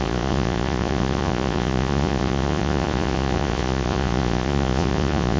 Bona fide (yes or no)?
no